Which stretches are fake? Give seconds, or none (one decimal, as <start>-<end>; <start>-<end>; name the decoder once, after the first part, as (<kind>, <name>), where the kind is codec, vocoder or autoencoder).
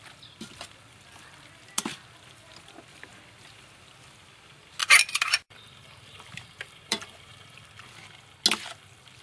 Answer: 4.8-7.6 (vocoder, BigVGAN v2)